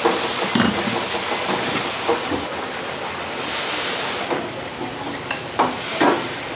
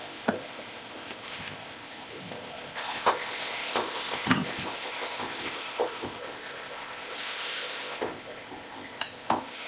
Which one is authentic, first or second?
first